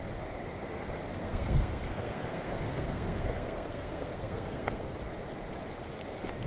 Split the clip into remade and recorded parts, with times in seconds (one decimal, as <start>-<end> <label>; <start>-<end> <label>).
0.0-1.1 recorded; 1.1-5.0 remade; 5.0-6.5 recorded